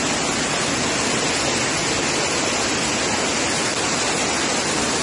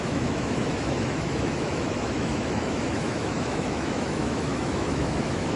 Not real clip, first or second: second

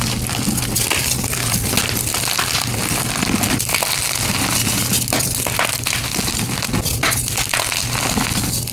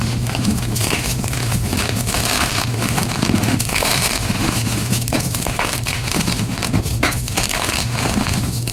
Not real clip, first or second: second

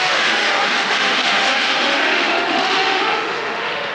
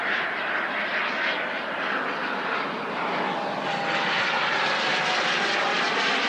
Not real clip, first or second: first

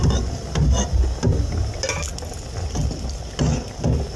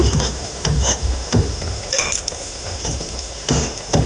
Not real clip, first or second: second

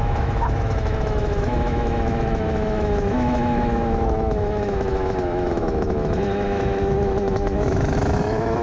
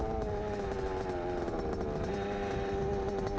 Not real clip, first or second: first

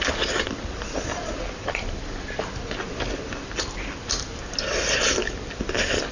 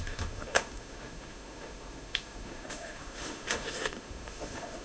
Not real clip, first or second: second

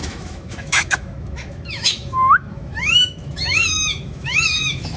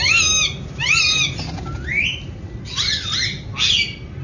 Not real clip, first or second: first